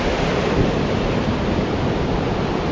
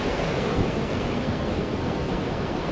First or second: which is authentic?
first